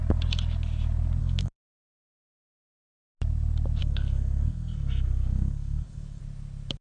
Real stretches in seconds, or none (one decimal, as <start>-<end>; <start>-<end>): 0.0-1.2; 2.2-3.8; 6.2-6.8